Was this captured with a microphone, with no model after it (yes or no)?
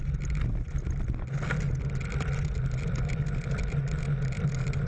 yes